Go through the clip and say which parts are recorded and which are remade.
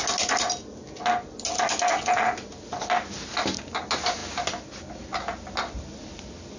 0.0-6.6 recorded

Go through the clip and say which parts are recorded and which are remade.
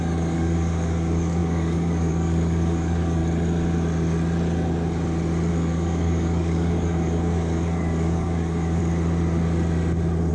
0.0-3.2 remade; 3.2-5.5 recorded; 5.5-8.8 remade; 8.8-10.3 recorded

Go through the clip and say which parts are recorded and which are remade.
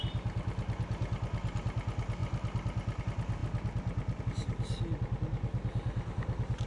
0.0-6.7 recorded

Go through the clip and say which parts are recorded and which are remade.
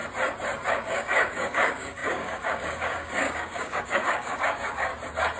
0.0-0.7 recorded; 0.7-4.9 remade; 4.9-5.4 recorded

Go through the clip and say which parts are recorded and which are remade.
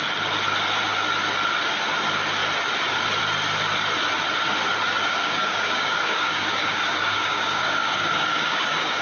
0.0-5.2 recorded; 5.2-9.0 remade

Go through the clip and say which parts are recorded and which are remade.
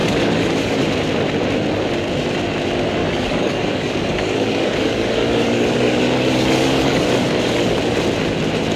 0.0-0.8 remade; 0.8-3.0 recorded; 3.0-7.8 remade; 7.8-8.8 recorded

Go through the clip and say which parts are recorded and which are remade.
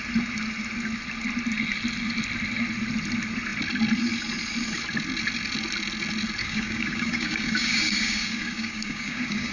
0.0-6.4 recorded; 6.4-9.5 remade